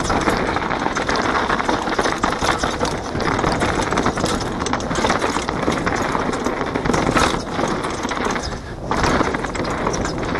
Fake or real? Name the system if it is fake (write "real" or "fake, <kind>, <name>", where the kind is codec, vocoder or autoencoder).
real